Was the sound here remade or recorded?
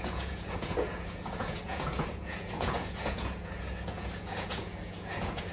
remade